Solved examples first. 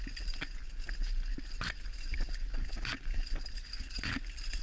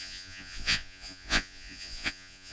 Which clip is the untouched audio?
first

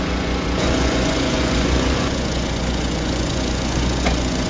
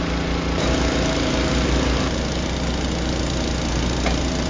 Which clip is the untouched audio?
second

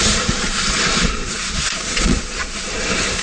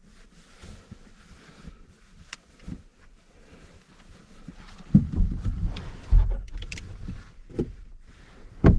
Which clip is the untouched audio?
second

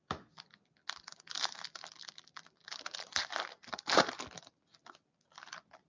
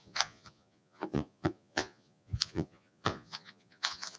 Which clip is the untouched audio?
first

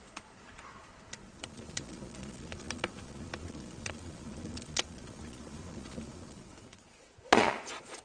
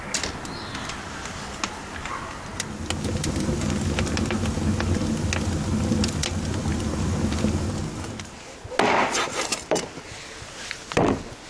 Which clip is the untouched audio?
second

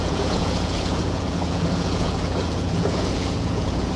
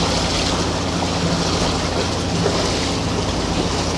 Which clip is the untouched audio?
second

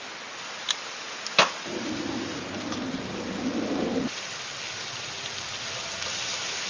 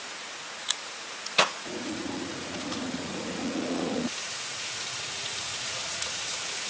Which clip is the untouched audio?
first